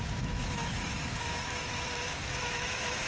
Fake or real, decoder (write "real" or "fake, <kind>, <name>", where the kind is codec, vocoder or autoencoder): fake, autoencoder, DAC-VAE